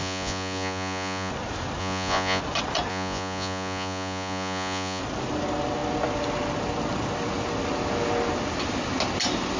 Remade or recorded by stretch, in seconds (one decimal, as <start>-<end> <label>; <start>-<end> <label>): 0.0-1.3 remade; 1.3-1.8 recorded; 1.8-2.4 remade; 2.4-2.9 recorded; 2.9-5.0 remade; 5.0-9.6 recorded